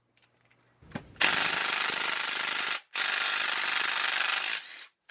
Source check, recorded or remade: recorded